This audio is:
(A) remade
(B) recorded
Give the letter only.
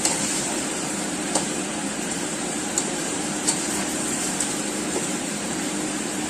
A